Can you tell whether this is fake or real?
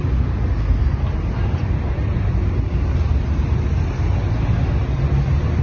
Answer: real